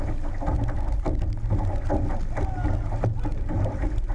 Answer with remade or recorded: recorded